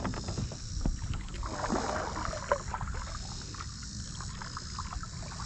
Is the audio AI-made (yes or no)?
no